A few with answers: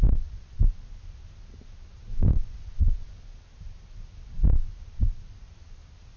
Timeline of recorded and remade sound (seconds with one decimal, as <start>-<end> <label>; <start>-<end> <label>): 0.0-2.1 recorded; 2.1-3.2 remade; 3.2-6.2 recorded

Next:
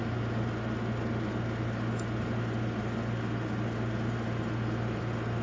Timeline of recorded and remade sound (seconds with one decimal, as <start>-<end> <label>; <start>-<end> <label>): 0.0-5.4 recorded

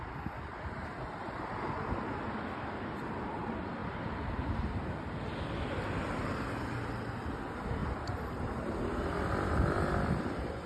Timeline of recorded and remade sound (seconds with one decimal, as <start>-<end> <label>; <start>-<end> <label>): 0.0-10.7 recorded